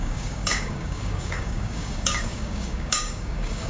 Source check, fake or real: fake